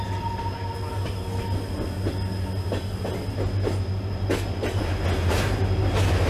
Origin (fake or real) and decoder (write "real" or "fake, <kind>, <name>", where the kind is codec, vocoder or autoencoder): real